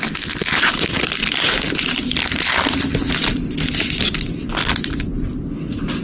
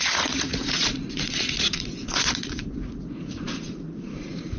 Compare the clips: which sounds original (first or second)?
first